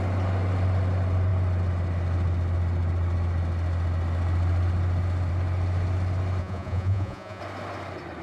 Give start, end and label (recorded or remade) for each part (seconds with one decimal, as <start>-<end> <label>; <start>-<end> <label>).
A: 0.0-6.4 recorded; 6.4-7.4 remade; 7.4-8.2 recorded